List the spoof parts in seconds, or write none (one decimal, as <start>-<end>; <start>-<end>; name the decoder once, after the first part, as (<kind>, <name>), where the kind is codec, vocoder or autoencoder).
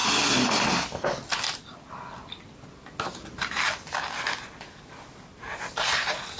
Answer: none